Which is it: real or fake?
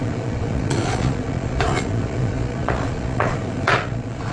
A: fake